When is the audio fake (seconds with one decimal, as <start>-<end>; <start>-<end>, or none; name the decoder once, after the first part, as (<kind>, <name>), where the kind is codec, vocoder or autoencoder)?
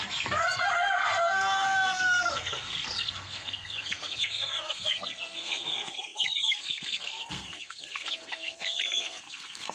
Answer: 0.0-9.7 (codec, SNAC)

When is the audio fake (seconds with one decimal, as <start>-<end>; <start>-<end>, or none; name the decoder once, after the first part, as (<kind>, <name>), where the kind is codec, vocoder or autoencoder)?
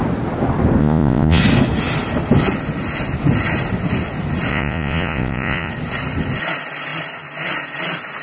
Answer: 0.8-1.4 (vocoder, Vocos); 4.5-5.7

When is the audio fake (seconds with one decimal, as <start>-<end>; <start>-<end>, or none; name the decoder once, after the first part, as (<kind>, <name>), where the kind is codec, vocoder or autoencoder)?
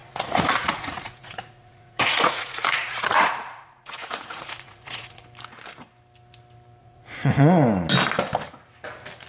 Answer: 0.0-5.2 (vocoder, Vocos); 6.8-7.5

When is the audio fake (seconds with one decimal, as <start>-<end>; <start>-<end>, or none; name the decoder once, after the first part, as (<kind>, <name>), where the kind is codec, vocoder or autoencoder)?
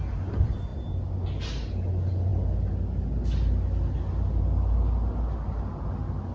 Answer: none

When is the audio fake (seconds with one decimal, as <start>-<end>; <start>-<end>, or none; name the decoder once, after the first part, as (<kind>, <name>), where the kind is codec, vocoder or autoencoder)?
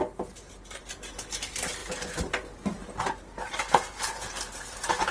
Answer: 1.8-5.1 (vocoder, BigVGAN v2)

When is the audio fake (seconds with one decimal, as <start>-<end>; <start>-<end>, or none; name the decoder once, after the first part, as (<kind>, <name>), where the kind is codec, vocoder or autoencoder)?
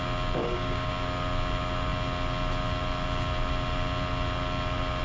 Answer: 0.4-0.9 (codec, DAC)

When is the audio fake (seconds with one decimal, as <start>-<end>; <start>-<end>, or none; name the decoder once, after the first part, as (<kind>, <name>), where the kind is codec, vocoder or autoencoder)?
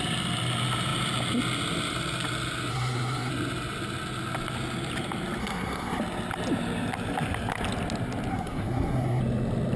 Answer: 2.7-3.3 (codec, SNAC); 5.4-6.0; 8.3-9.2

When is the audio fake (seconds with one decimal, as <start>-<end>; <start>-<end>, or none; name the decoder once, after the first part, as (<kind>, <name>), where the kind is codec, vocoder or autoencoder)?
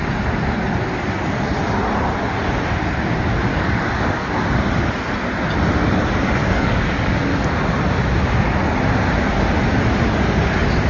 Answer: 3.5-4.3 (codec, DAC); 6.4-7.3